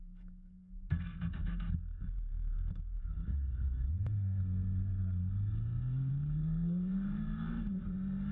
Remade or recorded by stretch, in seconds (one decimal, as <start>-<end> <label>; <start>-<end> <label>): 0.0-8.3 remade